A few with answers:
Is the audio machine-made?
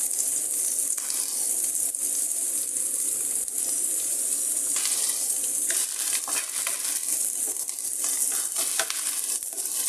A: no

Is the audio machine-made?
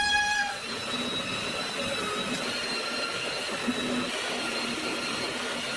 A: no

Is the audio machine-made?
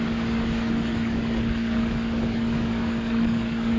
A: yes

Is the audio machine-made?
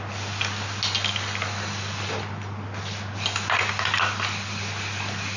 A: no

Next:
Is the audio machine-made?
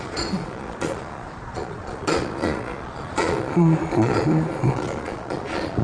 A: yes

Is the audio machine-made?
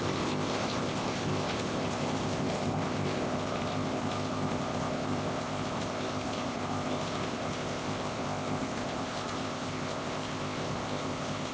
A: yes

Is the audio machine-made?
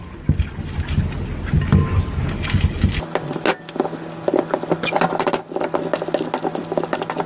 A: no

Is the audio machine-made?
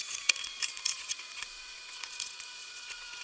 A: yes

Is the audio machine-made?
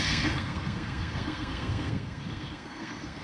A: yes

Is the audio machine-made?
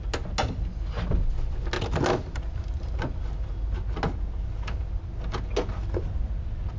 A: no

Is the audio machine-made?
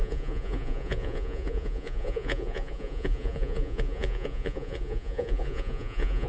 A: yes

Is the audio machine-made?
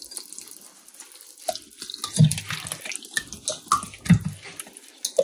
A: no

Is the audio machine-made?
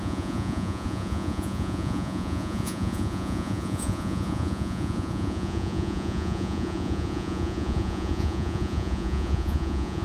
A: yes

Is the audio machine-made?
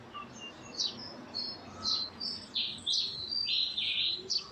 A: no